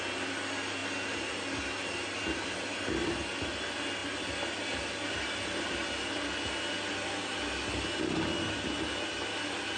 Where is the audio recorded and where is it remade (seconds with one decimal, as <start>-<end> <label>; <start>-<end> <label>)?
0.0-9.8 recorded